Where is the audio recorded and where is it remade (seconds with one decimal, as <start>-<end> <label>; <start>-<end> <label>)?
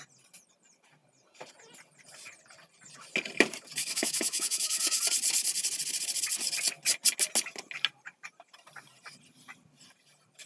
0.0-3.8 recorded; 3.8-5.0 remade; 5.0-10.5 recorded